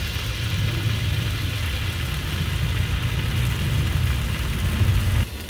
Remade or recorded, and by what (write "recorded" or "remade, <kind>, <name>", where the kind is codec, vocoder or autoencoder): recorded